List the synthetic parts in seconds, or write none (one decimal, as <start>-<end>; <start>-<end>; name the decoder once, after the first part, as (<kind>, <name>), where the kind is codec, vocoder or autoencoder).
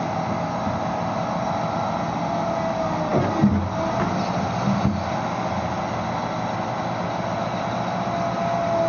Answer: none